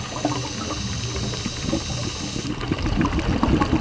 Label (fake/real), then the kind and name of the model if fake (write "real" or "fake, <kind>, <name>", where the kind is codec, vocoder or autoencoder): real